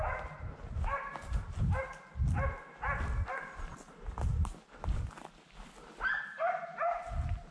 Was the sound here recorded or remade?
recorded